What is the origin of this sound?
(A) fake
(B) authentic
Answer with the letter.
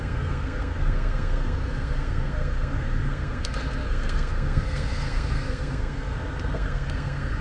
A